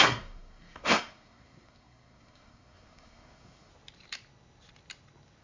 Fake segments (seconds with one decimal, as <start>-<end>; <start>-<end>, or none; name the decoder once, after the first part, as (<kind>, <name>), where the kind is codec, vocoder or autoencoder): 0.0-3.7 (codec, SNAC)